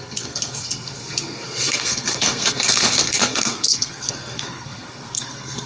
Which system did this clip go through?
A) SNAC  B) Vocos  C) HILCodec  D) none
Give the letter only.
A